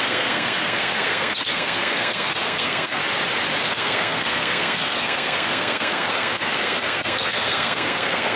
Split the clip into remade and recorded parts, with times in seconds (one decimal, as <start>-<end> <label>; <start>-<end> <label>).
0.0-3.0 remade; 3.0-3.7 recorded; 3.7-8.4 remade